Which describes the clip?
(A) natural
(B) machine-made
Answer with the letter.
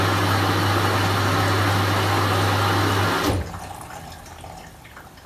A